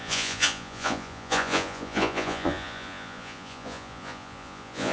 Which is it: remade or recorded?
remade